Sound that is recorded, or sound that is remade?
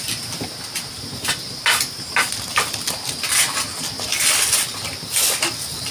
recorded